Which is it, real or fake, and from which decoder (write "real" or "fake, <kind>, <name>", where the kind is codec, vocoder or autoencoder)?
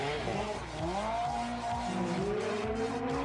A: real